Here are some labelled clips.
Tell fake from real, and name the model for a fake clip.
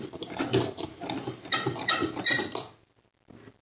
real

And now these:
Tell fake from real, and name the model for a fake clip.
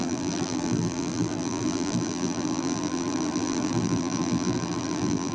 fake, vocoder, BigVGAN v2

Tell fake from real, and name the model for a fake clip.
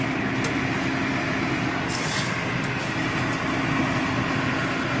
real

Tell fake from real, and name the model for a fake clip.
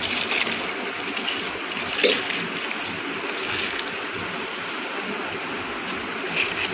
real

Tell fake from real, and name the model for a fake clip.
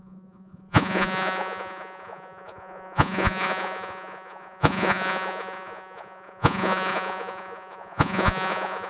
fake, vocoder, Vocos